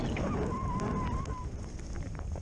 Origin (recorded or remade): recorded